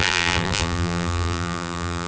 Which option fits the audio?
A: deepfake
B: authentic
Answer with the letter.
A